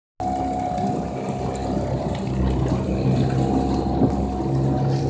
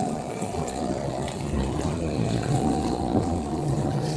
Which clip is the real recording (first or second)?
first